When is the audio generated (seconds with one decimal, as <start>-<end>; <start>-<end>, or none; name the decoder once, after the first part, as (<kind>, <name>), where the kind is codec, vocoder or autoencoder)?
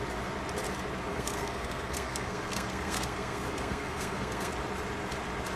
1.1-4.5 (codec, SNAC)